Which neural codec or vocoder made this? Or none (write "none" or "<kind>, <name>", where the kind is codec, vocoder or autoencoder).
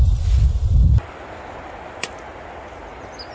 none